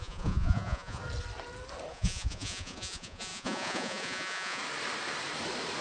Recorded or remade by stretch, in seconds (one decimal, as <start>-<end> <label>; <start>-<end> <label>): 0.0-1.0 remade; 1.0-1.9 recorded; 1.9-4.6 remade; 4.6-5.8 recorded